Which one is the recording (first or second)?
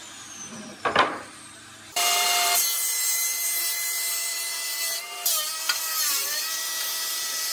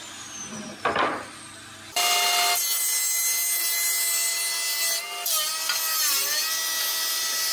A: second